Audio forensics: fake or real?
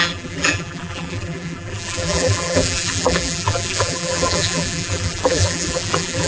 fake